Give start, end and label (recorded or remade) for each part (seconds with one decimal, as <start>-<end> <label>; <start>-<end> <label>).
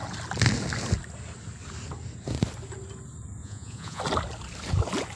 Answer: 0.0-3.4 recorded; 3.4-4.0 remade; 4.0-5.2 recorded